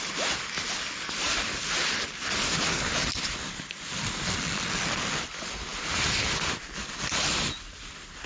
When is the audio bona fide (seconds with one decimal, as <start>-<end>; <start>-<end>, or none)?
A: 0.0-8.3